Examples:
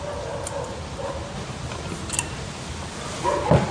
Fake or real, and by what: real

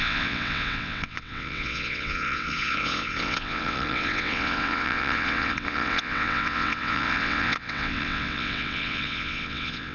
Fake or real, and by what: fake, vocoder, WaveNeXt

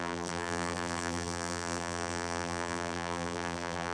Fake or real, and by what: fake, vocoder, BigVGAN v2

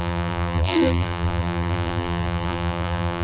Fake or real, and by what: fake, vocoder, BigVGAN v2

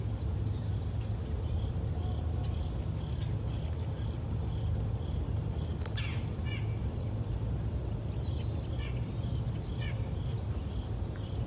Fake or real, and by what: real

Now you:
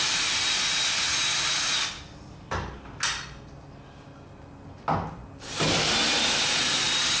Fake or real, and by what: real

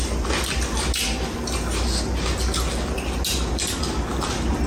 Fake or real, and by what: real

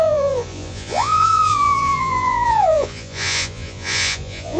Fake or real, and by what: fake, vocoder, Vocos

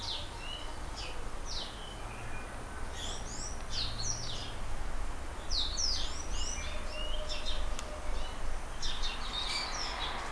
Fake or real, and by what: real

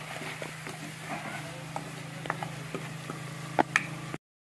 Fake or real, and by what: real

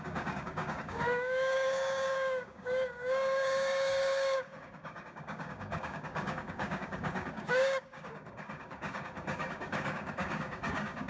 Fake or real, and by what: fake, codec, DAC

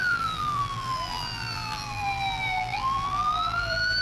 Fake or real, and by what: fake, vocoder, BigVGAN v2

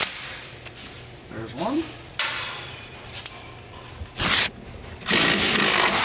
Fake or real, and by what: fake, vocoder, BigVGAN v2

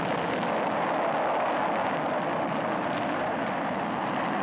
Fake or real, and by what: real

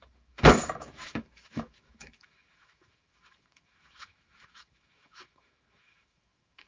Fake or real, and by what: fake, autoencoder, DAC-VAE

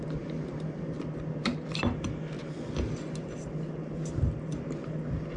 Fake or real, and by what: real